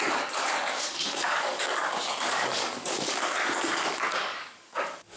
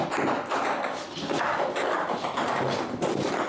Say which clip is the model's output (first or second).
first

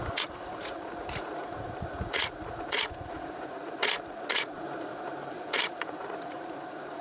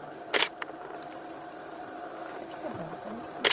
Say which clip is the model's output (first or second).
first